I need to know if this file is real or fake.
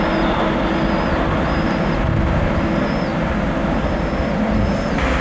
real